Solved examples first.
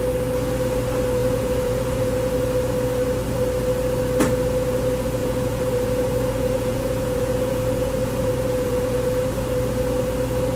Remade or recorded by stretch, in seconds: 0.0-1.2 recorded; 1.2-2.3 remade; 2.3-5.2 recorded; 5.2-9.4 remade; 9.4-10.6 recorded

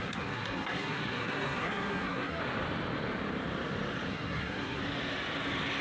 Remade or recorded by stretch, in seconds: 0.0-2.4 remade; 2.4-4.1 recorded; 4.1-4.8 remade; 4.8-5.8 recorded